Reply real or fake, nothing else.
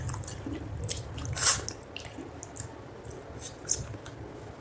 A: real